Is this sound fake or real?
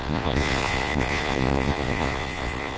fake